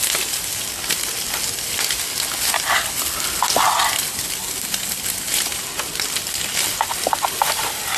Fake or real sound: real